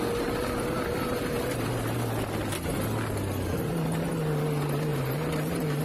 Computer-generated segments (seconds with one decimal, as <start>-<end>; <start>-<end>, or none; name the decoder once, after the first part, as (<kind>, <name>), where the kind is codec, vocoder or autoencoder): 3.5-4.1 (vocoder, BigVGAN v2); 4.9-5.8